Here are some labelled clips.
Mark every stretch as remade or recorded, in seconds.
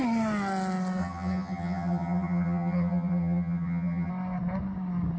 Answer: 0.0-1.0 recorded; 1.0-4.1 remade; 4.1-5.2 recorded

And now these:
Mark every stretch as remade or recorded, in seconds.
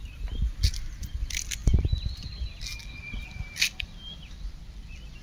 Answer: 0.0-5.2 recorded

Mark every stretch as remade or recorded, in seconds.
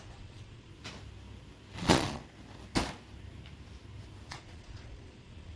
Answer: 0.0-0.7 remade; 0.7-1.8 recorded; 1.8-2.2 remade; 2.2-4.3 recorded; 4.3-5.6 remade